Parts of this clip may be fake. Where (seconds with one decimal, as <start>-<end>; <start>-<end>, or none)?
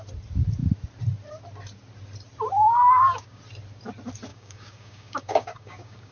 2.8-3.4; 4.3-6.1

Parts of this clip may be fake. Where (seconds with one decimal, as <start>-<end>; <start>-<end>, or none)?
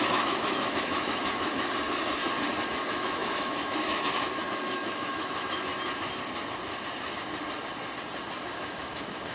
0.0-2.2; 2.7-5.7; 8.5-9.3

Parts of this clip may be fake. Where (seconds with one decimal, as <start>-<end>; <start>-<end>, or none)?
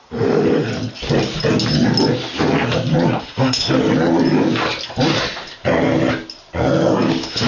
0.0-0.7; 3.2-3.8; 7.1-7.5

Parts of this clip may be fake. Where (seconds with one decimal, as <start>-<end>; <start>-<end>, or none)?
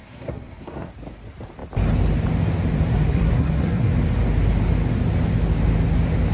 0.0-0.9; 2.9-3.9